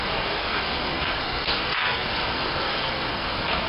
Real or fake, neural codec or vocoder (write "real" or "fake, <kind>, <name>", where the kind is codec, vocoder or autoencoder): fake, codec, SNAC